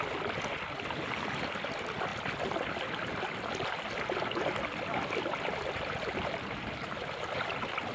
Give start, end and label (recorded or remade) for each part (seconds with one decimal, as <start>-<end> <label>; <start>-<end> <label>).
0.0-7.9 recorded